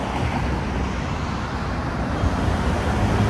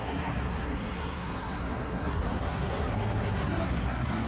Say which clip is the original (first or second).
first